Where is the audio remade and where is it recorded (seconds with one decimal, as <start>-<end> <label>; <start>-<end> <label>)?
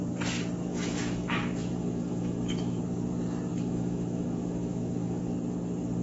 0.0-0.7 recorded; 0.7-2.8 remade; 2.8-3.5 recorded; 3.5-5.2 remade; 5.2-6.0 recorded